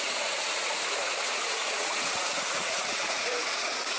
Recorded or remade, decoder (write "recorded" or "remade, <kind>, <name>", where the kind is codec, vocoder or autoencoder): remade, vocoder, Vocos